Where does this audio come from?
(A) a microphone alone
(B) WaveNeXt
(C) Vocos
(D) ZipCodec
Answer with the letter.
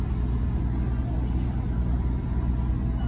A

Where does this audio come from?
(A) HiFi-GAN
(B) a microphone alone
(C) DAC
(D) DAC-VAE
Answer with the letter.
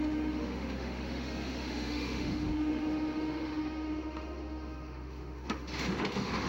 D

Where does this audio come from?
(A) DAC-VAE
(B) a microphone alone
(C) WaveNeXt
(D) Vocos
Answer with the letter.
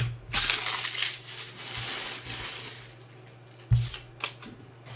B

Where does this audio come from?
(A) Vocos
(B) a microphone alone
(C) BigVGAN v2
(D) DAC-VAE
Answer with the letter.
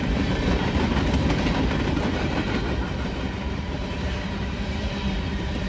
C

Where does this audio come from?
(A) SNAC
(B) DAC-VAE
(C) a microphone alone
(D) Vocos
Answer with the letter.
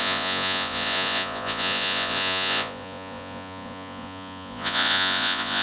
D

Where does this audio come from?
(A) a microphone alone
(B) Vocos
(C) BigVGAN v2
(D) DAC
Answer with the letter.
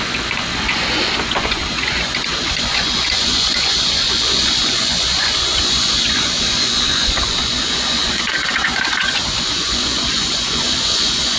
B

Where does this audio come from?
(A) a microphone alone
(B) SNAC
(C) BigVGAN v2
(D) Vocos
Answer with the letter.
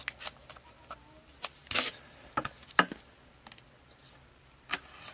A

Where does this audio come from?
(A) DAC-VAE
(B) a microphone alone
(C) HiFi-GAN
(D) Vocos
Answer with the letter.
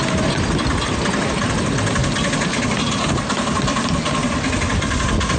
B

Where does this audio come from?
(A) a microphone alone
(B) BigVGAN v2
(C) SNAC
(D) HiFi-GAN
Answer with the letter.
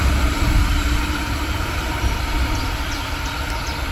B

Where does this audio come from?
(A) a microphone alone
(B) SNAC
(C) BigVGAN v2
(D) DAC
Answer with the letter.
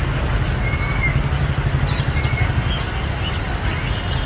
A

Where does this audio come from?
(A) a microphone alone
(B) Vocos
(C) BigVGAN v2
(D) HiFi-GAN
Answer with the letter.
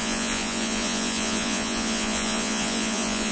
B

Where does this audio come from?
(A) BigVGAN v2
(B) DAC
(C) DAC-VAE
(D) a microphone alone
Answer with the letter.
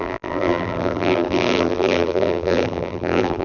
A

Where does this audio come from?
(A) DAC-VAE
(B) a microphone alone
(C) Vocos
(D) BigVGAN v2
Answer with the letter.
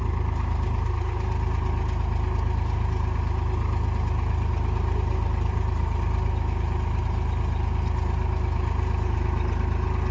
B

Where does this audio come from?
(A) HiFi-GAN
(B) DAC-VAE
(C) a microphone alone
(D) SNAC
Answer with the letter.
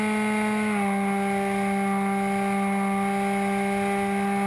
C